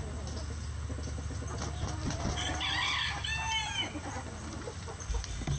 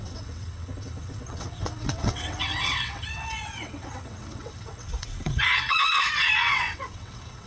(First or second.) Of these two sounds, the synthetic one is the second